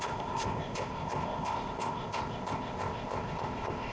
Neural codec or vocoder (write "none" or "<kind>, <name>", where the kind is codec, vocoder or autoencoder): codec, ZipCodec